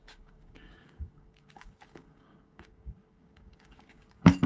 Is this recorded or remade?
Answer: remade